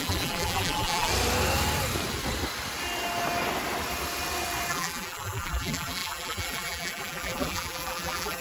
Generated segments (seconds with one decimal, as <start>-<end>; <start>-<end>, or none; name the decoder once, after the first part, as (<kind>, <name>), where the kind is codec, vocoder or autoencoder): 0.0-1.1 (vocoder, BigVGAN v2); 4.7-8.4

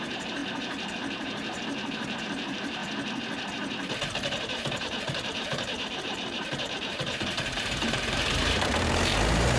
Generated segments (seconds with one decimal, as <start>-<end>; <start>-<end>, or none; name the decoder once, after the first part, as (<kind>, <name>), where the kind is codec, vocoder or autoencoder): 0.0-2.8 (vocoder, BigVGAN v2); 4.4-9.6